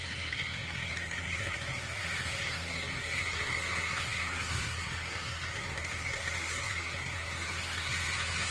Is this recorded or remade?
remade